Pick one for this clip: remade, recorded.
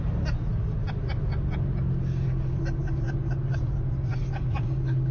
recorded